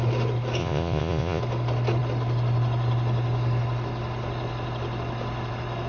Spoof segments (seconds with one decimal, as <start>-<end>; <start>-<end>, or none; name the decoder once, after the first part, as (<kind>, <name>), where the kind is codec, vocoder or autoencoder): 0.6-1.4 (vocoder, Vocos)